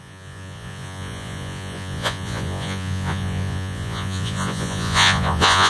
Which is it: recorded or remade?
remade